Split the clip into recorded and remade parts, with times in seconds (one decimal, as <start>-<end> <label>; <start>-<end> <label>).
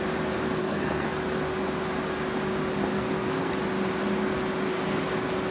0.0-0.6 recorded; 0.6-1.1 remade; 1.1-2.9 recorded; 2.9-3.5 remade; 3.5-5.5 recorded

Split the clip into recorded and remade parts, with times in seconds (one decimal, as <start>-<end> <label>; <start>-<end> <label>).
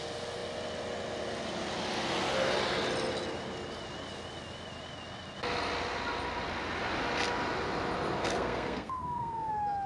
0.0-8.2 recorded; 8.2-9.5 remade; 9.5-9.9 recorded